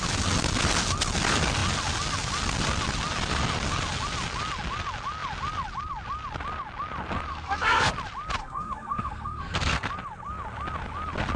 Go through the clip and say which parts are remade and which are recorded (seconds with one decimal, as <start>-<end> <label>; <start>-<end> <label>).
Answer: 0.0-7.3 recorded; 7.3-7.9 remade; 7.9-8.4 recorded; 8.4-9.9 remade; 9.9-11.4 recorded

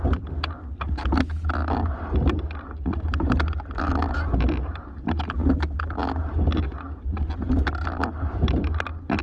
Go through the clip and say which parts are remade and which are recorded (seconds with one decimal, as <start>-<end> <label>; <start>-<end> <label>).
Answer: 0.0-9.2 recorded

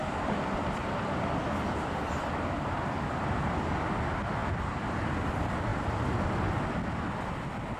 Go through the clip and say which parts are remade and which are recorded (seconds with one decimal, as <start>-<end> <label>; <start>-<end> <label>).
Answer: 0.0-7.8 recorded

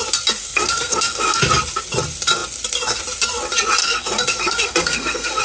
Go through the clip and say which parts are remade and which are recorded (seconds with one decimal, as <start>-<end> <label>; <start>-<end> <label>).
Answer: 0.0-0.4 recorded; 0.4-1.4 remade; 1.4-3.8 recorded; 3.8-5.4 remade

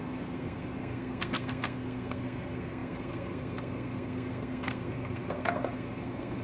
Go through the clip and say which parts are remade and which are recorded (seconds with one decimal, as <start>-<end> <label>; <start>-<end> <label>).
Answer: 0.0-6.4 remade

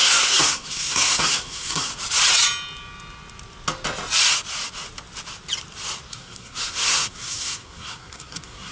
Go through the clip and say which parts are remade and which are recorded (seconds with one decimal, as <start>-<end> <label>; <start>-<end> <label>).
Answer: 0.0-1.9 remade; 1.9-6.1 recorded; 6.1-8.7 remade

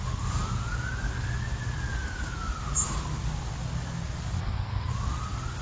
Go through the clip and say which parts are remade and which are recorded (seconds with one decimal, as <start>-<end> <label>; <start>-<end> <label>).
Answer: 0.0-4.4 recorded; 4.4-4.9 remade; 4.9-5.6 recorded

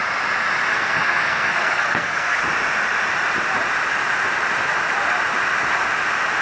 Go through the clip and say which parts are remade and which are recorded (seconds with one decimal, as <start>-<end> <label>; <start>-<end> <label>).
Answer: 0.0-0.7 recorded; 0.7-2.4 remade; 2.4-6.4 recorded